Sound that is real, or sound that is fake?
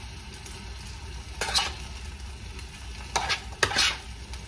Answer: real